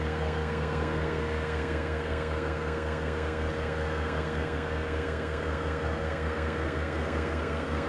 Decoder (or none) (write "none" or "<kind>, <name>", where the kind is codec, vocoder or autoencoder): codec, SNAC